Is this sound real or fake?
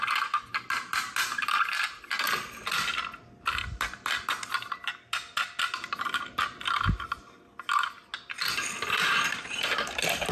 real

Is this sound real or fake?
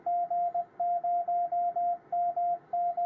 real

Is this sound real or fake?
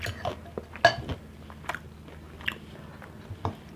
real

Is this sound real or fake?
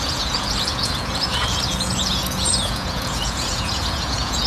fake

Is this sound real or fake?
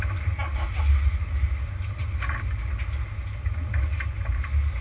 real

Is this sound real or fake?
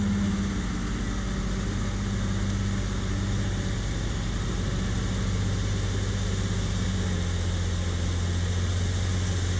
real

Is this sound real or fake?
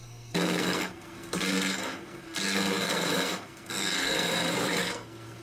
fake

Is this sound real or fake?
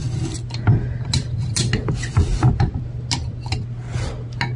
real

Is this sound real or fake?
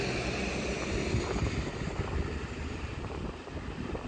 real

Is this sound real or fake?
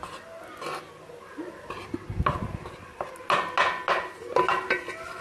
real